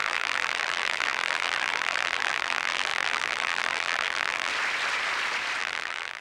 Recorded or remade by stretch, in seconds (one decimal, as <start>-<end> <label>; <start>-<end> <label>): 0.0-4.5 remade; 4.5-5.6 recorded; 5.6-6.2 remade